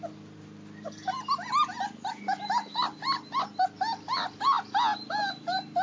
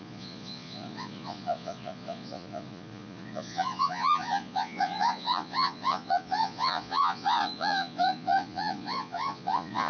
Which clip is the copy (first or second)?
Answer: second